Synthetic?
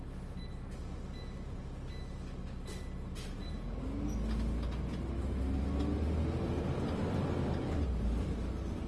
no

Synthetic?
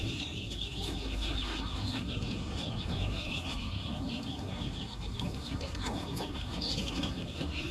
yes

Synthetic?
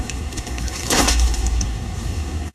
yes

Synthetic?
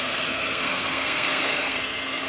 yes